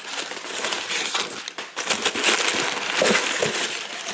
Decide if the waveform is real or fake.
real